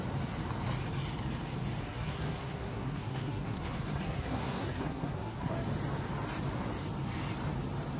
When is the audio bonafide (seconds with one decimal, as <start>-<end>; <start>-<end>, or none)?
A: 0.0-1.8; 5.5-8.0